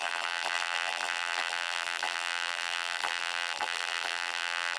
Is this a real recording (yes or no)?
no